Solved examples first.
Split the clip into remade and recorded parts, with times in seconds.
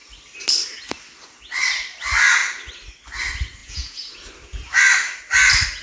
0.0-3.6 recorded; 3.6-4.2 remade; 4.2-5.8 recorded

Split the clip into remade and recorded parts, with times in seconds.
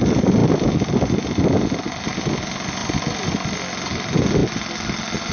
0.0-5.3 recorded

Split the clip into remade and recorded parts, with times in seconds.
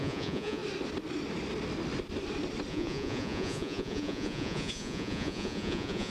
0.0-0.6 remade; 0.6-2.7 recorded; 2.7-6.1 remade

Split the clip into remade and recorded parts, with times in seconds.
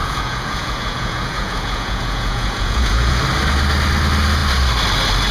0.0-3.2 remade; 3.2-5.3 recorded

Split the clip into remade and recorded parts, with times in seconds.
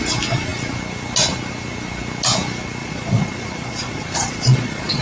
0.0-2.8 recorded; 2.8-5.0 remade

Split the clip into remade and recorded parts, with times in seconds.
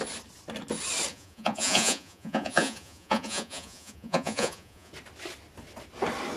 0.0-1.1 recorded; 1.1-4.9 remade; 4.9-6.4 recorded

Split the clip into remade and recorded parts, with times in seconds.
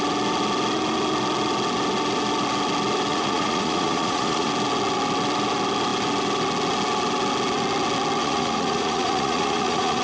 0.0-3.1 recorded; 3.1-4.5 remade; 4.5-8.2 recorded; 8.2-10.0 remade